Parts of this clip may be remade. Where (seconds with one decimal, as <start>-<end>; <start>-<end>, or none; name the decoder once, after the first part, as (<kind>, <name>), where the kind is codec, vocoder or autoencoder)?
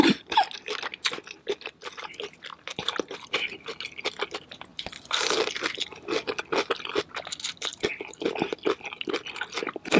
2.5-3.3 (vocoder, BigVGAN v2); 4.7-5.7; 7.7-9.0